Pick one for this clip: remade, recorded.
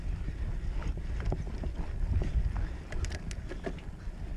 recorded